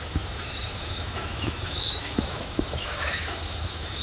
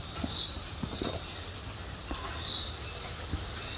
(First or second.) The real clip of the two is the second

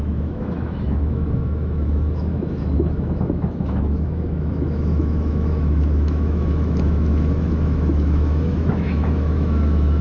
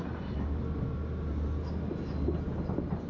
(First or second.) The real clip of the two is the second